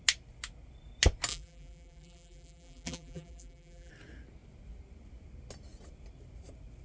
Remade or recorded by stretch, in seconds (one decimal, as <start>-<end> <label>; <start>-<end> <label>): 0.0-1.3 recorded; 1.3-3.9 remade; 3.9-6.8 recorded

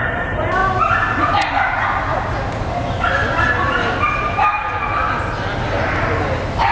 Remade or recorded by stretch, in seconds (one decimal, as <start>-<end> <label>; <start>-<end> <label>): 0.0-6.7 recorded

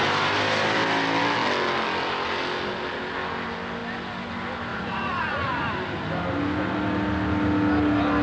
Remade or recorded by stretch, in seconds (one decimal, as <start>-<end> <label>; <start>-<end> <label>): 0.0-4.7 recorded; 4.7-5.7 remade; 5.7-8.2 recorded

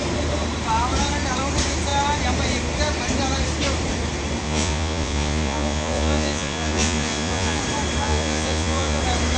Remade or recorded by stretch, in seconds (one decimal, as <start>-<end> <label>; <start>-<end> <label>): 0.0-4.4 recorded; 4.4-7.6 remade; 7.6-8.0 recorded; 8.0-9.0 remade; 9.0-9.4 recorded